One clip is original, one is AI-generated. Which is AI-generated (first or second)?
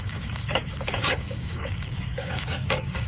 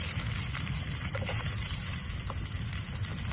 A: first